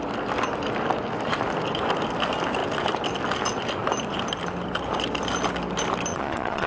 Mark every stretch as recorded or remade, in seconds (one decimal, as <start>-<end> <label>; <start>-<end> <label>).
0.0-6.1 recorded; 6.1-6.7 remade